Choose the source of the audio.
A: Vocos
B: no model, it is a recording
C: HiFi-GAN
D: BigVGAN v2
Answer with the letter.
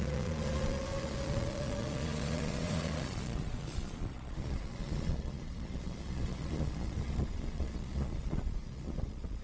A